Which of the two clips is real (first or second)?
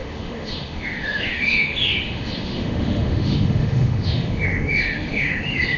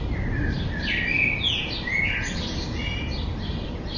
second